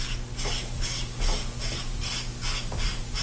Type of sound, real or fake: real